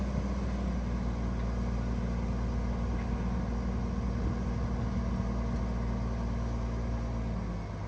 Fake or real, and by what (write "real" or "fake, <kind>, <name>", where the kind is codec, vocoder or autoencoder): real